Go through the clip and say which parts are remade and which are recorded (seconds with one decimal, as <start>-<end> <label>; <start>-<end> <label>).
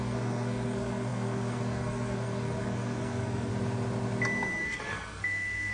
0.0-3.5 remade; 3.5-4.6 recorded; 4.6-5.7 remade